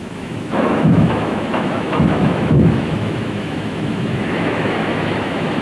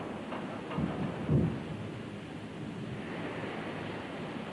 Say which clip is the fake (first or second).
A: first